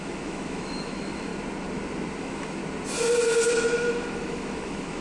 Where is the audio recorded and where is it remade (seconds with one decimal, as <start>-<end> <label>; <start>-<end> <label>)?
0.0-1.3 remade; 1.3-2.2 recorded; 2.2-2.6 remade; 2.6-3.5 recorded; 3.5-5.0 remade